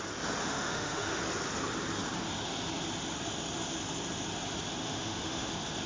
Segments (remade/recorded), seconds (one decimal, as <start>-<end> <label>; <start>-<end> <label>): 0.0-0.4 recorded; 0.4-1.2 remade; 1.2-4.8 recorded; 4.8-5.5 remade; 5.5-5.9 recorded